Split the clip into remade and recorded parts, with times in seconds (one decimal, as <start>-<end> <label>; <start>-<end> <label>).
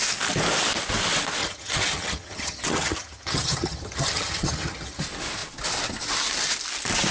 0.0-1.4 recorded; 1.4-5.0 remade; 5.0-7.1 recorded